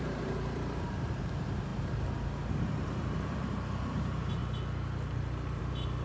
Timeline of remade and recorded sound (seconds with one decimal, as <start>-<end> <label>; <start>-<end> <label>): 0.0-4.4 remade; 4.4-5.6 recorded; 5.6-6.0 remade